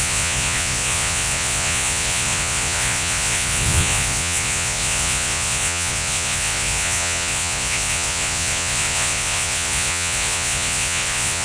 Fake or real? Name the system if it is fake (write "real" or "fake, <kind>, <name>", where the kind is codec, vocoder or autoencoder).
fake, vocoder, Vocos